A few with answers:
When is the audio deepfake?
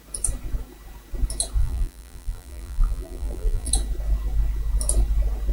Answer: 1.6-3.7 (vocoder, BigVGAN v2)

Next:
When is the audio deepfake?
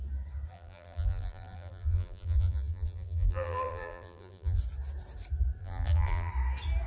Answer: 0.5-4.6 (vocoder, BigVGAN v2); 5.6-6.3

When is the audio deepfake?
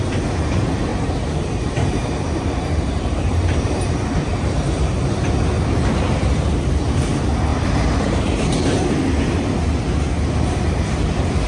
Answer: 0.9-5.3 (vocoder, BigVGAN v2); 7.5-8.8